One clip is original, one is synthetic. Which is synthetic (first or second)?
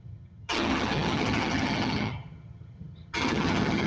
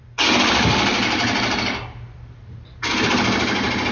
first